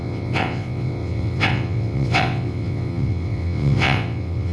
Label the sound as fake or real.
fake